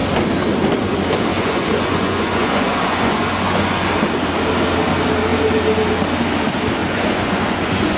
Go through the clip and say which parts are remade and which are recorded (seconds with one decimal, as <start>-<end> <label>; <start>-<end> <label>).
0.0-1.3 recorded; 1.3-3.9 remade; 3.9-6.8 recorded; 6.8-8.0 remade